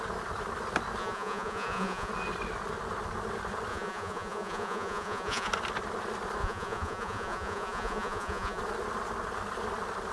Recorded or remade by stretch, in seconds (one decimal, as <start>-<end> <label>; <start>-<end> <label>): 0.0-1.0 recorded; 1.0-2.1 remade; 2.1-3.7 recorded; 3.7-5.5 remade; 5.5-6.4 recorded; 6.4-8.6 remade; 8.6-10.1 recorded